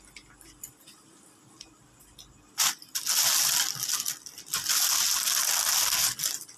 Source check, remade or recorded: recorded